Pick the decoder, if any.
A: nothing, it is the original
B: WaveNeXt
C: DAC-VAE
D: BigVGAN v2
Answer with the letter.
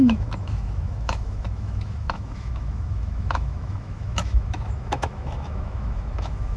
C